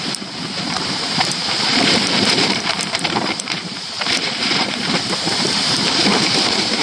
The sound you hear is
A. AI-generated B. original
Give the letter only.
A